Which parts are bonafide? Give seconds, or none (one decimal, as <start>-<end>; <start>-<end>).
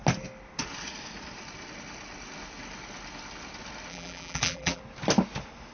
0.0-3.9; 4.8-5.7